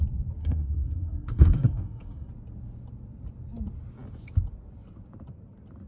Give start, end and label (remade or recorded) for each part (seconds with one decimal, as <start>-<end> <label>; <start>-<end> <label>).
0.0-0.4 recorded; 0.4-2.3 remade; 2.3-5.9 recorded